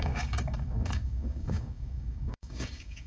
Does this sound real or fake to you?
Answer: fake